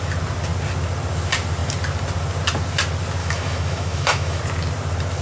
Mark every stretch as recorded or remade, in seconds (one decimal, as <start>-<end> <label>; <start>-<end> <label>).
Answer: 0.0-3.2 recorded; 3.2-4.4 remade; 4.4-5.2 recorded